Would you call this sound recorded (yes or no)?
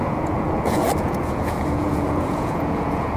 no